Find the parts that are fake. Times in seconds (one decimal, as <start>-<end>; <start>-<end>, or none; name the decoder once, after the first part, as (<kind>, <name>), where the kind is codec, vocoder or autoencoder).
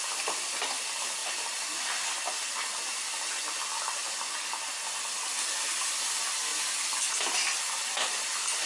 0.0-6.5 (vocoder, BigVGAN v2); 7.2-8.7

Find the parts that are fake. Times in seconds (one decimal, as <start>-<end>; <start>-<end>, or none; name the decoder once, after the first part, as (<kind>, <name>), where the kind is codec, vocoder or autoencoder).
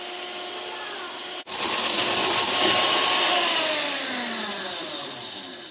none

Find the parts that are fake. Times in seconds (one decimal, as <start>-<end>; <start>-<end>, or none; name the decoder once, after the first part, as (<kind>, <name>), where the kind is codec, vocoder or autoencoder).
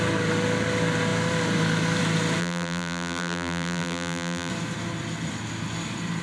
2.4-4.5 (vocoder, BigVGAN v2)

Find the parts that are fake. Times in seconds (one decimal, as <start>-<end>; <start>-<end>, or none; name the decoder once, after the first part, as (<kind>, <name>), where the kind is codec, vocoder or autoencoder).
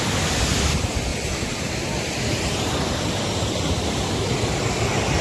0.0-5.2 (vocoder, BigVGAN v2)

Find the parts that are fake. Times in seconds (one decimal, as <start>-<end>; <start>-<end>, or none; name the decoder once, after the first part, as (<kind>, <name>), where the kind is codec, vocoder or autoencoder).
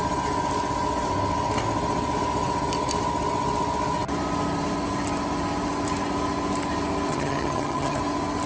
7.1-8.0 (vocoder, HiFi-GAN)